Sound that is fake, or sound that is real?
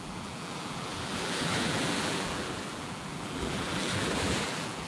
fake